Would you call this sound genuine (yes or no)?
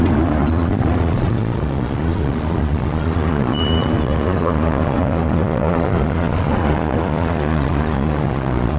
no